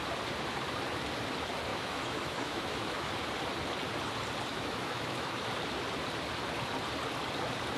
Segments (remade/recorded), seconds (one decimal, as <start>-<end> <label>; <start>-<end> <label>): 0.0-1.7 recorded; 1.7-3.1 remade; 3.1-4.5 recorded; 4.5-5.4 remade; 5.4-7.8 recorded